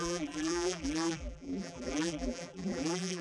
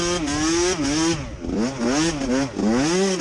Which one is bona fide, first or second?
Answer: second